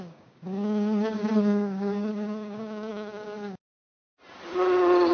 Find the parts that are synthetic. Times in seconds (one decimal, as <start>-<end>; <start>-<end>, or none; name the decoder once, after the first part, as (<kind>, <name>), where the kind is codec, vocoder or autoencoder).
0.0-4.1 (codec, DAC)